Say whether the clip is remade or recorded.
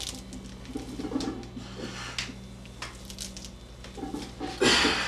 recorded